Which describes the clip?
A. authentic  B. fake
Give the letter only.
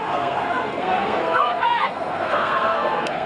B